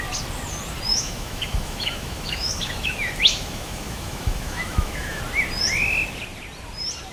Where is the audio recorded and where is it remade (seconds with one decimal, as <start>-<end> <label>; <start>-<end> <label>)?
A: 0.0-0.9 recorded; 0.9-5.2 remade; 5.2-7.1 recorded